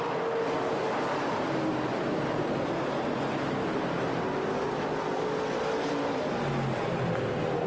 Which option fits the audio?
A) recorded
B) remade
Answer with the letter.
A